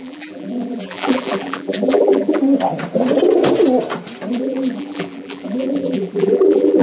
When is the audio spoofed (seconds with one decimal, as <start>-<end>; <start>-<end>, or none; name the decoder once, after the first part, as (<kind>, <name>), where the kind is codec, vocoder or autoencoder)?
0.0-2.4 (vocoder, BigVGAN v2); 4.3-6.8